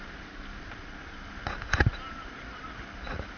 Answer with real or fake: real